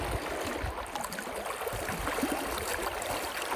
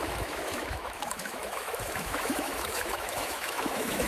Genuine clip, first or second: first